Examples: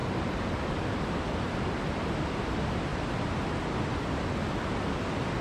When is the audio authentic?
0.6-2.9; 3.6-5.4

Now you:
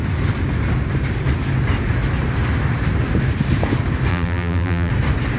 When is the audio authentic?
0.0-4.1; 4.9-5.4